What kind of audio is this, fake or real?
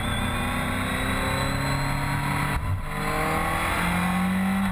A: real